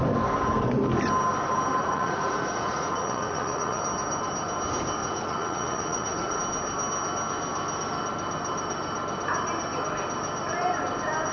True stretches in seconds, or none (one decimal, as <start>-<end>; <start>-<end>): 0.0-1.8; 3.8-5.0; 6.4-11.3